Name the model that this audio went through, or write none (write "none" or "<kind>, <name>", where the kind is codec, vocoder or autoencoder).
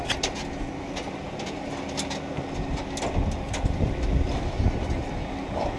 none